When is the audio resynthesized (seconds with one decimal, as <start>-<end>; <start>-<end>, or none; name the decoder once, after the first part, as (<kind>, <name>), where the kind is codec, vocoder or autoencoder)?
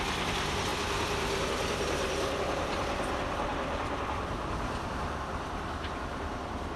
0.0-6.8 (vocoder, BigVGAN v2)